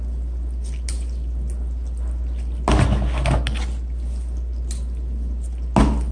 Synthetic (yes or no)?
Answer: no